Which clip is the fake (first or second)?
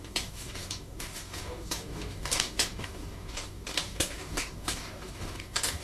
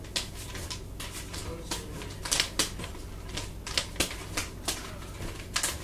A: first